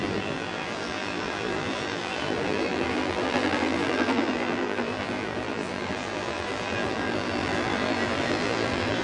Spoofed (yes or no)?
yes